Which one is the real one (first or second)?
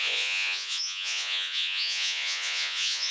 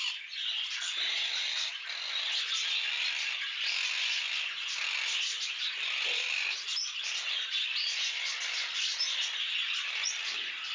second